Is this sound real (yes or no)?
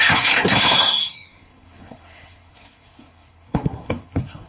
no